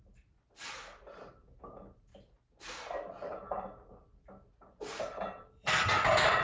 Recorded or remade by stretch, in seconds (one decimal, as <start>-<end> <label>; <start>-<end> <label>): 0.0-2.1 remade; 2.1-5.2 recorded; 5.2-6.4 remade